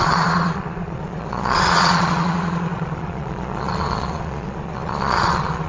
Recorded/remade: remade